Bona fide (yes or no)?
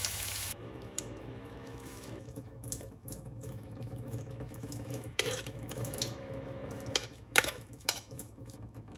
no